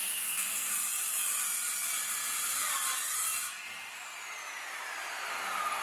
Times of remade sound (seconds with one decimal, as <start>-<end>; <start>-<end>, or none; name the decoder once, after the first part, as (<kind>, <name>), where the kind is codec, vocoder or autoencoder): 0.0-0.7 (codec, SNAC)